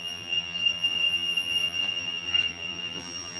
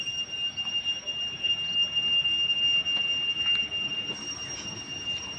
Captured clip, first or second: second